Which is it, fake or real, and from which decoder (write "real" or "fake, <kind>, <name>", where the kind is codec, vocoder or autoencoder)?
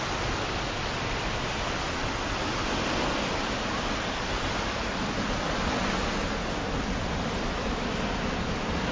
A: real